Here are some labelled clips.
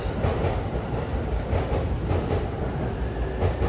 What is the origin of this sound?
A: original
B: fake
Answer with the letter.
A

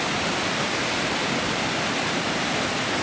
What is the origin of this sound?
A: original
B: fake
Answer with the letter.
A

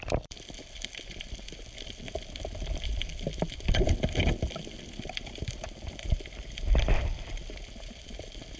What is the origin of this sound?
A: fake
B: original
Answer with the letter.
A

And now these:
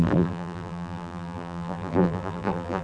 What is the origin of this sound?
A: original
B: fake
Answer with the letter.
B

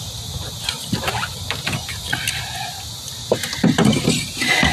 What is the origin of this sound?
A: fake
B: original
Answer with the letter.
B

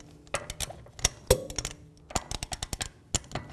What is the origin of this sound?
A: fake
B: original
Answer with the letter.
B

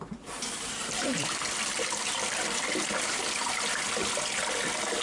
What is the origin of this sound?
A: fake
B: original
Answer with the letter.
A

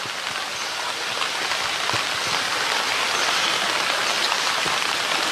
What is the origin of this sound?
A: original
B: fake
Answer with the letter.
A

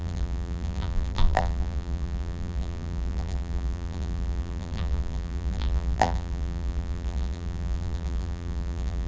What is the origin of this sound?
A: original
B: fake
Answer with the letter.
B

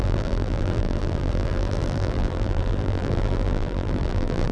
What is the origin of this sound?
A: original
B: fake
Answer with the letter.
B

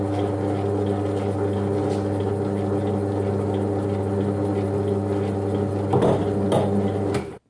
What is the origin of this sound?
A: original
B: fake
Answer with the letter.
A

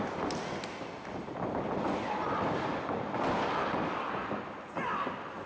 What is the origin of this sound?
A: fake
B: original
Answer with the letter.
A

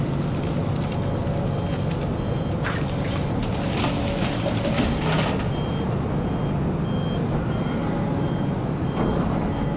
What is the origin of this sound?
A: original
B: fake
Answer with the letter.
A